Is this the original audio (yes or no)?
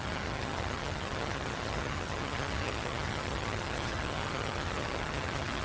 no